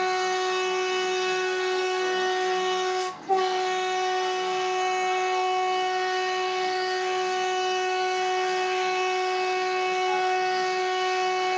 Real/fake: fake